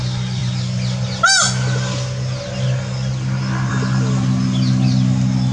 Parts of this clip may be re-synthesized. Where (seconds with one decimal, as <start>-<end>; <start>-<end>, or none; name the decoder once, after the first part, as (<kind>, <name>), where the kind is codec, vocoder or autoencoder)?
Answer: none